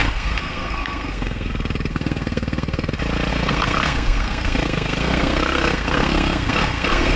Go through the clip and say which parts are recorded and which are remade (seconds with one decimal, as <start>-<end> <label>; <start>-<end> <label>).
0.0-1.5 remade; 1.5-1.9 recorded; 1.9-2.9 remade; 2.9-3.3 recorded; 3.3-7.2 remade